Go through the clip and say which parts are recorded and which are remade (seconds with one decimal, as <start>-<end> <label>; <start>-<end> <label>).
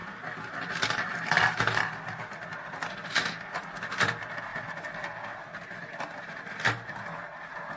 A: 0.0-7.8 recorded